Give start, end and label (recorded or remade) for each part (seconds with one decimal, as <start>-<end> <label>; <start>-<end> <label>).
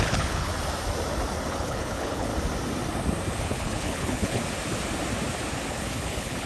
0.0-0.5 remade; 0.5-1.5 recorded; 1.5-2.3 remade; 2.3-3.4 recorded; 3.4-4.4 remade; 4.4-5.7 recorded; 5.7-6.5 remade